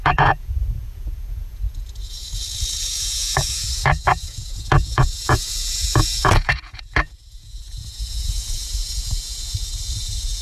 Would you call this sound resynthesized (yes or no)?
yes